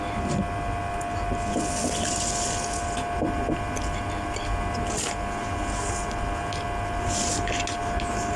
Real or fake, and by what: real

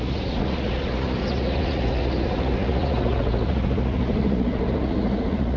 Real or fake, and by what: fake, vocoder, Vocos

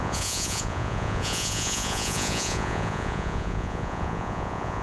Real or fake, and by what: fake, vocoder, Vocos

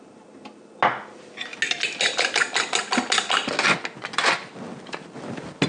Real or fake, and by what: real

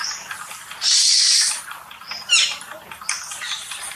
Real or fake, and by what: real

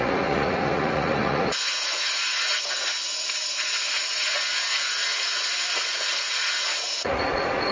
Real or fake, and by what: fake, vocoder, Vocos